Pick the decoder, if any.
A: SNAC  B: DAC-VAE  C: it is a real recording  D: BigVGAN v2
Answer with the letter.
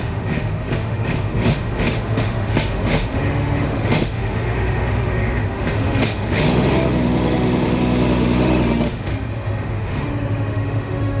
B